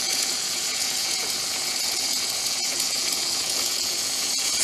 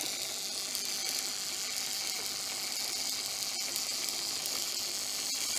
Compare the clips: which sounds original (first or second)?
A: second